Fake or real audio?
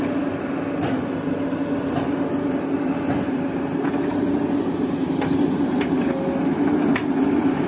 real